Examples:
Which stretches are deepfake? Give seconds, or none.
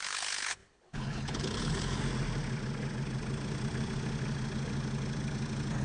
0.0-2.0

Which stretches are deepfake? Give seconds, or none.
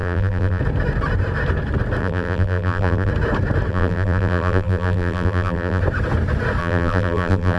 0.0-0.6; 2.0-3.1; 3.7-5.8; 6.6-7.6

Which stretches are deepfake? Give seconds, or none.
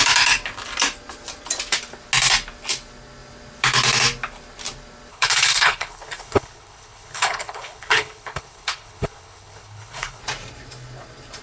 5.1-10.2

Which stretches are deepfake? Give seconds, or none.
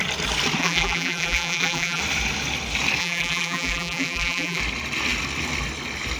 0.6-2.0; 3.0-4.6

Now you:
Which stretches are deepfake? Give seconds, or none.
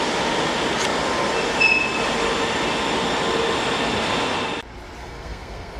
5.0-5.8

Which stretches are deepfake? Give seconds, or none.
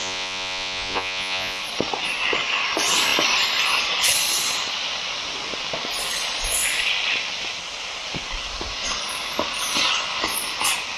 0.0-1.6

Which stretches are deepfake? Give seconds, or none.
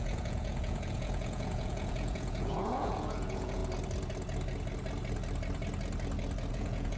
0.0-3.6; 6.5-7.0